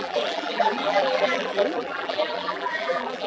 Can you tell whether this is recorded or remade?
remade